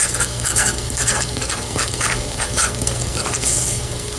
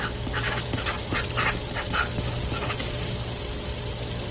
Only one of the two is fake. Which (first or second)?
first